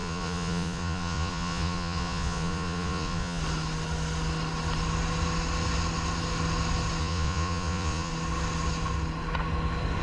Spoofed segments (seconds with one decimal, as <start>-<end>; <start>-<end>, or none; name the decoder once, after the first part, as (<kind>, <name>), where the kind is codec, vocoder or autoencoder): 0.0-3.4 (vocoder, Vocos); 7.0-8.1